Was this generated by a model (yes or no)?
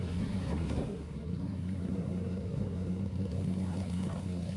yes